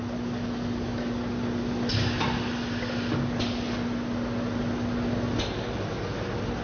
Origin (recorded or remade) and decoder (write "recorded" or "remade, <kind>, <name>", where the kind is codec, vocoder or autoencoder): recorded